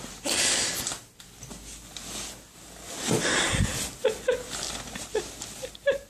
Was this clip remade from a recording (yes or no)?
no